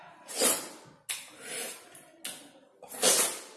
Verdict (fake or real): real